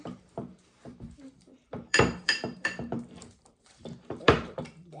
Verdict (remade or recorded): remade